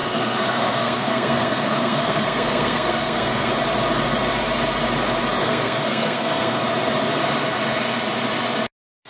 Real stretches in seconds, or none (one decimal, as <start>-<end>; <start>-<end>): 3.5-5.4; 6.6-9.1